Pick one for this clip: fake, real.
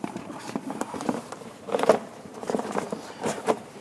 fake